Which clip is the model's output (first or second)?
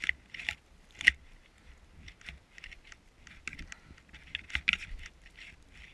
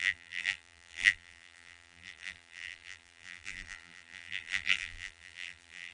second